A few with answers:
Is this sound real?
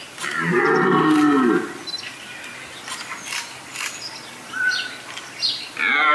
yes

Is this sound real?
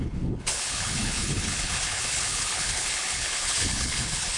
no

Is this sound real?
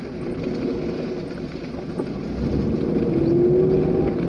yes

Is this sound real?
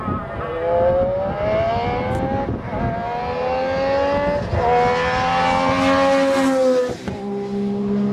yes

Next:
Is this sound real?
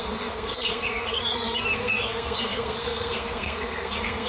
no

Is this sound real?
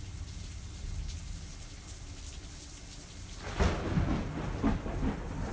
yes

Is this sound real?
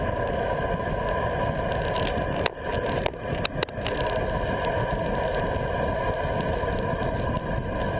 yes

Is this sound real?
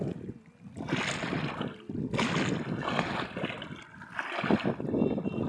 yes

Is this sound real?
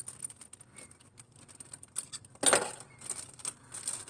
yes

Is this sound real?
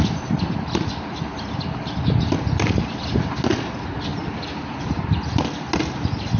yes